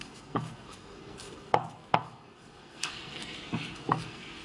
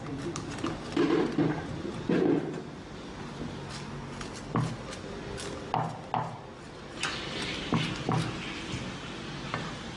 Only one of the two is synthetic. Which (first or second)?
first